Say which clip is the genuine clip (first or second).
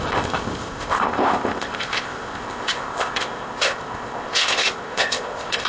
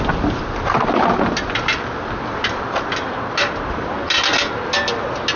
second